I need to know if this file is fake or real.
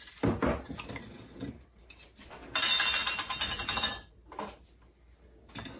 real